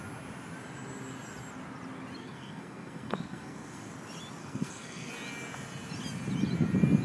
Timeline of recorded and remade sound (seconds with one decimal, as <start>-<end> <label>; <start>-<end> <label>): 0.0-2.2 recorded; 2.2-3.9 remade; 3.9-4.4 recorded; 4.4-5.1 remade; 5.1-7.0 recorded